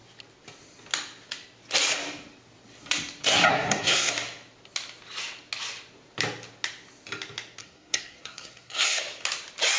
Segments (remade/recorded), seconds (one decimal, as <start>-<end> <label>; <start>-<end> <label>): 0.0-3.5 recorded; 3.5-4.1 remade; 4.1-7.6 recorded; 7.6-9.0 remade; 9.0-9.8 recorded